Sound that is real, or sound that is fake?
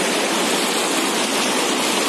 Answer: real